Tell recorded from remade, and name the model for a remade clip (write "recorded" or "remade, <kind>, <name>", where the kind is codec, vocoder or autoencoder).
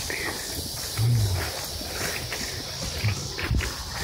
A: recorded